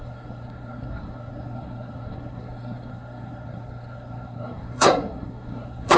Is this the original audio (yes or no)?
no